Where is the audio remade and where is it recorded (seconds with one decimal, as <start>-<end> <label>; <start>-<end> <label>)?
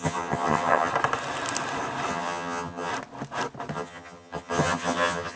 0.0-0.9 remade; 0.9-2.1 recorded; 2.1-2.9 remade; 2.9-3.7 recorded; 3.7-5.4 remade